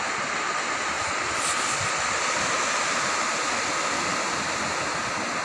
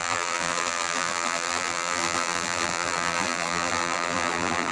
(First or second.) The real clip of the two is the first